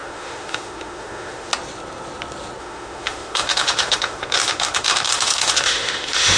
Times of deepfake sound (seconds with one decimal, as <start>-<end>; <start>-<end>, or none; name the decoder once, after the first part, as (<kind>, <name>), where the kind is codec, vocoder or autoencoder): 0.0-1.5 (autoencoder, DAC-VAE); 2.6-6.4